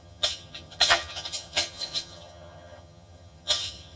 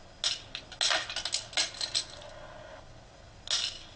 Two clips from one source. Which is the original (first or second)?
second